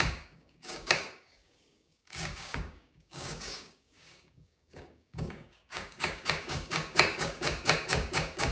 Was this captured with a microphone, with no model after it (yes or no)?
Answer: no